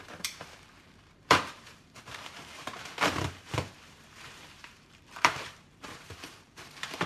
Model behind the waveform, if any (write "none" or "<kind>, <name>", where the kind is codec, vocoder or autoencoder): vocoder, BigVGAN v2